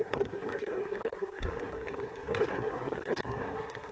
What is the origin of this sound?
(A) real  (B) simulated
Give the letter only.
B